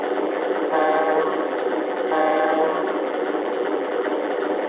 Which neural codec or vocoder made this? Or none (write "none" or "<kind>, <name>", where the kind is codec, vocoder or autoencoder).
vocoder, BigVGAN v2